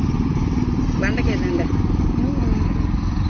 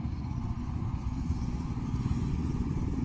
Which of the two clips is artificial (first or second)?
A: second